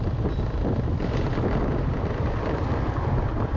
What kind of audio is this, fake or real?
real